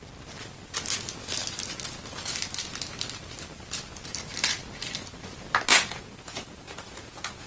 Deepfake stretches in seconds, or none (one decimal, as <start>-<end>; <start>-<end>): 5.7-7.5